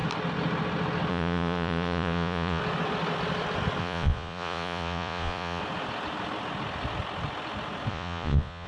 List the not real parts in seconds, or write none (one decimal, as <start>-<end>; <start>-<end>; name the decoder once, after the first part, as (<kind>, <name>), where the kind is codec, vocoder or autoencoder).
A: 1.1-2.6 (vocoder, Vocos); 3.8-5.6; 7.9-8.7